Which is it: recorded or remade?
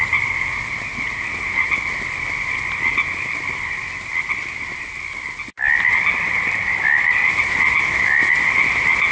recorded